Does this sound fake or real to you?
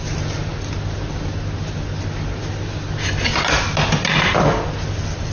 real